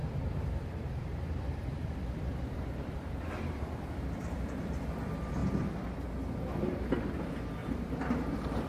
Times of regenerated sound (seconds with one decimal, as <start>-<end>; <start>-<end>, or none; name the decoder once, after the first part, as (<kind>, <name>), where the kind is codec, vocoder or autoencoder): 0.0-4.9 (vocoder, BigVGAN v2); 5.4-6.0; 7.6-8.7